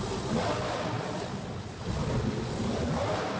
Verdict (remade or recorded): recorded